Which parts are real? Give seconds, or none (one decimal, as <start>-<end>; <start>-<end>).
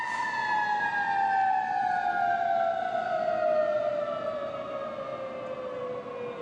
0.0-6.4